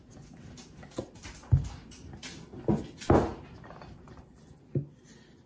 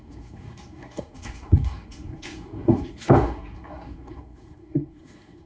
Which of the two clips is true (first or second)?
first